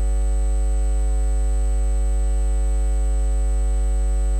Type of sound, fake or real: real